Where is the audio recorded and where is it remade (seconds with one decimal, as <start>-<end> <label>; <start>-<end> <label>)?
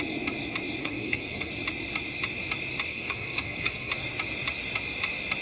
0.0-0.8 recorded; 0.8-1.5 remade; 1.5-2.9 recorded; 2.9-3.9 remade; 3.9-5.4 recorded